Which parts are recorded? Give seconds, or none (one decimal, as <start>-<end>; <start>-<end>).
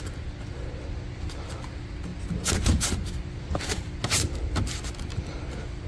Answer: 0.0-5.9